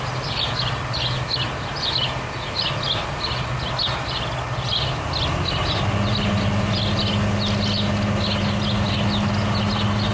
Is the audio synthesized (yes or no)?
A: no